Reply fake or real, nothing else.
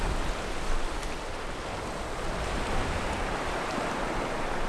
real